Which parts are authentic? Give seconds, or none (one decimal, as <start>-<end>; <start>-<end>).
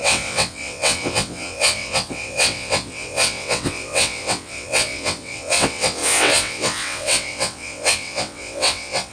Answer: none